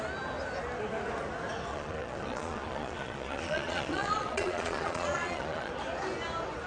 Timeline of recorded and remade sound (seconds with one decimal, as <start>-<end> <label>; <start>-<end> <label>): 0.0-1.7 recorded; 1.7-5.7 remade; 5.7-6.7 recorded